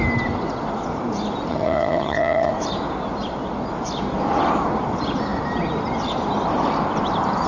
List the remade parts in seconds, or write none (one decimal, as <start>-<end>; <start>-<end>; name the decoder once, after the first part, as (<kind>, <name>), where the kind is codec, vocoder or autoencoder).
1.5-2.5 (vocoder, HiFi-GAN)